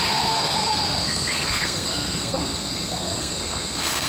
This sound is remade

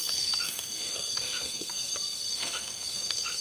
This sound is remade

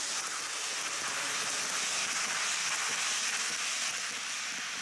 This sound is recorded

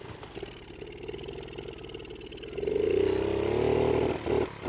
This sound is recorded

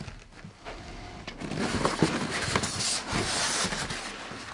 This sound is recorded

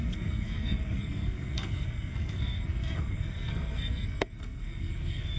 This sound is remade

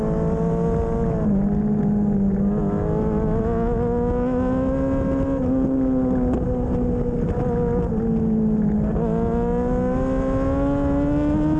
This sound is recorded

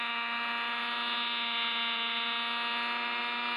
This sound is recorded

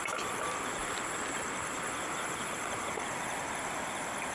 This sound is recorded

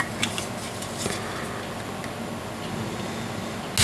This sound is recorded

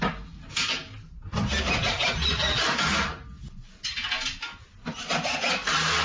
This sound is recorded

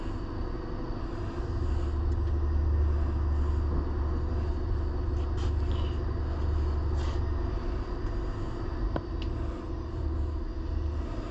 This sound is recorded